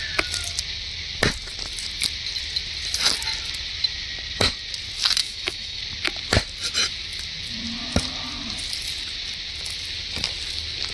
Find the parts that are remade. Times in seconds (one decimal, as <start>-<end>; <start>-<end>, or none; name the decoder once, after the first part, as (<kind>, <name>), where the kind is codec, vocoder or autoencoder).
5.2-5.8 (autoencoder, DAC-VAE)